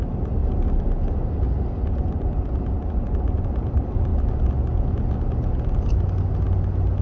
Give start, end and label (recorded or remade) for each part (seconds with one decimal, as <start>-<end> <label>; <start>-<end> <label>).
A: 0.0-7.0 recorded